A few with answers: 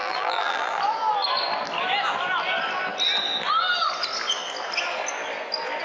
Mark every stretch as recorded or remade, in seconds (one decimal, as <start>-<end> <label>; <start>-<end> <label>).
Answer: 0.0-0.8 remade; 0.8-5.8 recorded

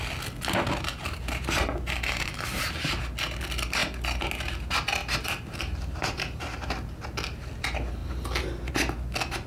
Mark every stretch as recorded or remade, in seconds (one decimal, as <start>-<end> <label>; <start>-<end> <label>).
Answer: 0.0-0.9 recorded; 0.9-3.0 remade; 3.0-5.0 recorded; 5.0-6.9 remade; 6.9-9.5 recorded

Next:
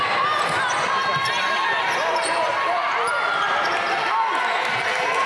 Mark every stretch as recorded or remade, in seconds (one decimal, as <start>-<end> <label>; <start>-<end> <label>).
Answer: 0.0-5.3 recorded

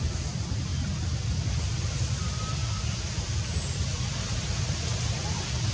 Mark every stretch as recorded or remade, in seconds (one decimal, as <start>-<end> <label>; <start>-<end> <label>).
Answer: 0.0-0.7 remade; 0.7-1.6 recorded; 1.6-2.6 remade; 2.6-4.6 recorded; 4.6-5.7 remade